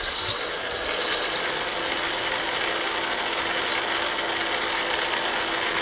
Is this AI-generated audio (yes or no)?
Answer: no